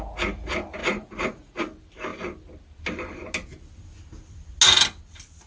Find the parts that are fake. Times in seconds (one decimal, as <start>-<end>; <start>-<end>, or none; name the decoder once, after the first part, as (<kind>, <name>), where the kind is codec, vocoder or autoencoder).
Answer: 0.8-1.6 (vocoder, Vocos)